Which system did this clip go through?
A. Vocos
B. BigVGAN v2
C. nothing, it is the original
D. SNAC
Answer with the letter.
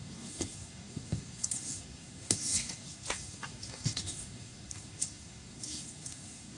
D